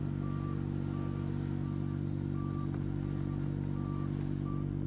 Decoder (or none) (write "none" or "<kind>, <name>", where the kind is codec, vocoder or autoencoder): none